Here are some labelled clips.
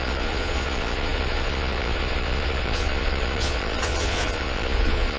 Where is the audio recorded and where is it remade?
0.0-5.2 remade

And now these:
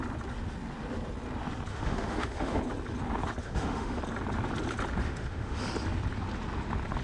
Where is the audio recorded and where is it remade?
0.0-1.7 recorded; 1.7-2.6 remade; 2.6-3.4 recorded; 3.4-4.0 remade; 4.0-5.0 recorded; 5.0-5.6 remade; 5.6-7.0 recorded

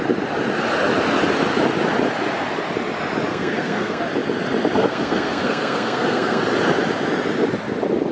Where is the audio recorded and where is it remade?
0.0-3.3 recorded; 3.3-4.0 remade; 4.0-4.8 recorded; 4.8-6.4 remade; 6.4-8.1 recorded

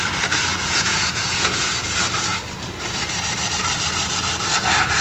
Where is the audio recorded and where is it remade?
0.0-0.5 recorded; 0.5-1.7 remade; 1.7-5.0 recorded